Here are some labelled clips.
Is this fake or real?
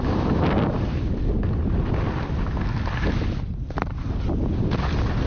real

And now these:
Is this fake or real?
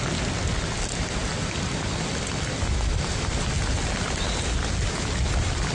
real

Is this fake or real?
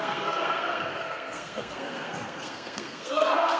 fake